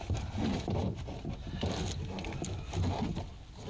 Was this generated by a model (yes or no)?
no